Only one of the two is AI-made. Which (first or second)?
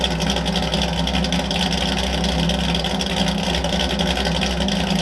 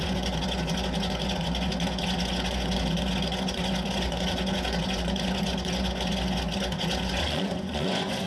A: second